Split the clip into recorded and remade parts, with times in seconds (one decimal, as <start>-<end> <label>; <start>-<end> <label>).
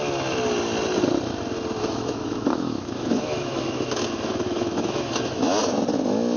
0.0-1.8 recorded; 1.8-5.6 remade; 5.6-6.4 recorded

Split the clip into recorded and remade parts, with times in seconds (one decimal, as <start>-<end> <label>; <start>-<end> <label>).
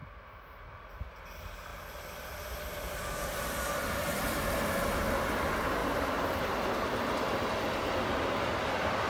0.0-1.7 recorded; 1.7-5.0 remade; 5.0-9.1 recorded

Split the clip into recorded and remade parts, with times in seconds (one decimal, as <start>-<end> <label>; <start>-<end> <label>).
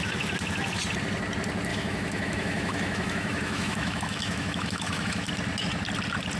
0.0-1.7 recorded; 1.7-5.3 remade; 5.3-6.4 recorded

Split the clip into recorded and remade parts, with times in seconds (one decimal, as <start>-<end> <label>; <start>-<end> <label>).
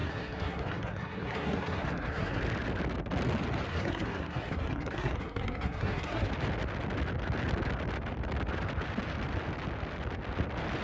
0.0-2.4 remade; 2.4-3.7 recorded; 3.7-6.3 remade; 6.3-10.8 recorded